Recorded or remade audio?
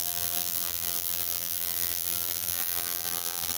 remade